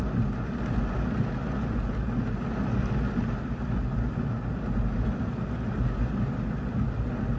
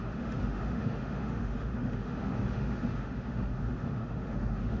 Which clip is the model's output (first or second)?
second